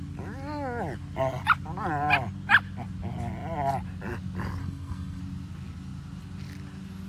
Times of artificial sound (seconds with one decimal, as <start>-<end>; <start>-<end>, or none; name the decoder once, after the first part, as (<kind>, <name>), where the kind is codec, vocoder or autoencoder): 4.6-5.2 (codec, SNAC)